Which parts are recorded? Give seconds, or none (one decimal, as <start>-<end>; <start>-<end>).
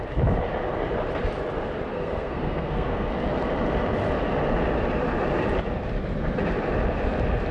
0.0-1.9; 3.1-7.5